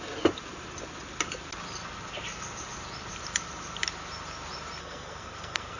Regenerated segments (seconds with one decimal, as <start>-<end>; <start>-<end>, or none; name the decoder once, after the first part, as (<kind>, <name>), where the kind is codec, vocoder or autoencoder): 4.8-5.8 (codec, SNAC)